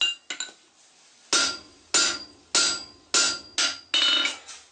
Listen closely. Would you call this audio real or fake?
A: real